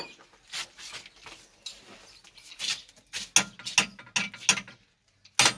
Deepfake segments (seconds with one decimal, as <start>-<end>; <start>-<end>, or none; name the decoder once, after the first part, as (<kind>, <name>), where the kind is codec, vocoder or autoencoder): none